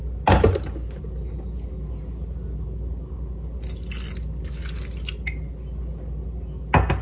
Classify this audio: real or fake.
real